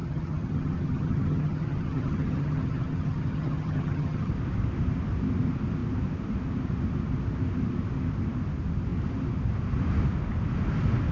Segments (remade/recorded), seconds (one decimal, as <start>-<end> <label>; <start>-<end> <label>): 0.0-4.3 remade; 4.3-11.1 recorded